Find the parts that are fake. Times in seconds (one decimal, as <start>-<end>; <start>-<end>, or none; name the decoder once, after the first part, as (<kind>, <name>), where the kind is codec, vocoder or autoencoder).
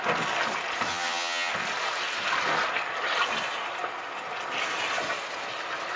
0.9-1.5 (vocoder, HiFi-GAN)